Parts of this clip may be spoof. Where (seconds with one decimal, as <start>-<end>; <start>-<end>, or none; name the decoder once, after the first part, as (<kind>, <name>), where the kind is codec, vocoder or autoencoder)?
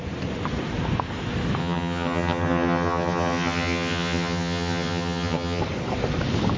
1.6-5.6 (vocoder, HiFi-GAN)